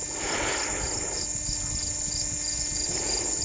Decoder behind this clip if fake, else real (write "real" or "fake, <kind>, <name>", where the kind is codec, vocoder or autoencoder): real